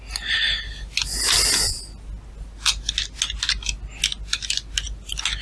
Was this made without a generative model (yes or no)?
yes